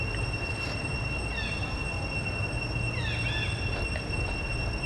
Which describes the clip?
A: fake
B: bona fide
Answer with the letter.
B